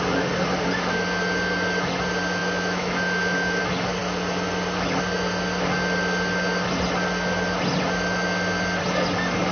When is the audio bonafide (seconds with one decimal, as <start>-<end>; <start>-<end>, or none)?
0.0-2.4; 3.6-9.5